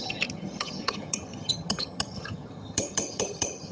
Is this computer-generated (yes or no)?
yes